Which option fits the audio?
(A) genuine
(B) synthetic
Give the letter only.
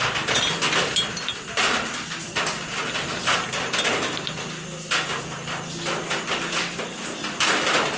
A